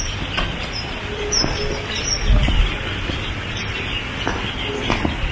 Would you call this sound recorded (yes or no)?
yes